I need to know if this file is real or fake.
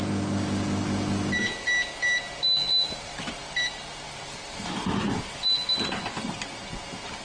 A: real